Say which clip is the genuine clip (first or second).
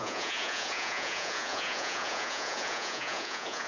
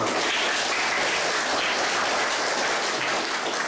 second